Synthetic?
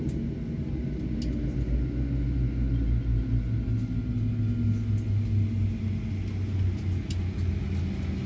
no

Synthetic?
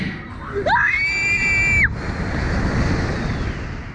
no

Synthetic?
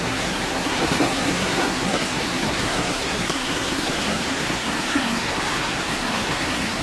yes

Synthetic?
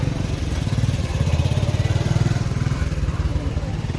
yes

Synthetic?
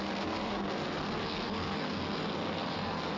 yes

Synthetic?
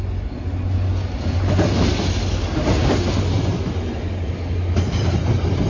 no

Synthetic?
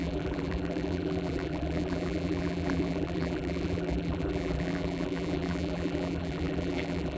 yes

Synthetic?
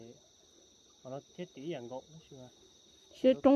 no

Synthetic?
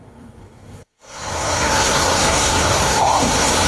yes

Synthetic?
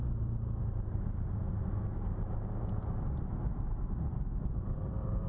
yes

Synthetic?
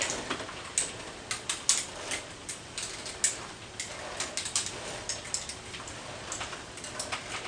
no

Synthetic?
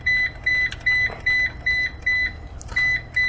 no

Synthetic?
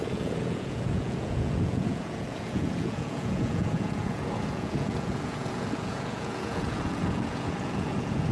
yes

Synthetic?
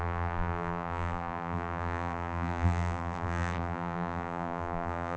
yes